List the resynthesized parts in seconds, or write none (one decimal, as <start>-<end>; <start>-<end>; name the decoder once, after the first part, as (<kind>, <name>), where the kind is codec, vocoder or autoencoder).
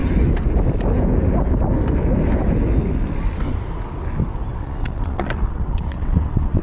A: 4.5-6.6 (vocoder, WaveNeXt)